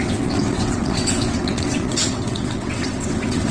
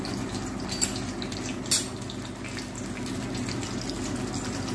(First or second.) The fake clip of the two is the first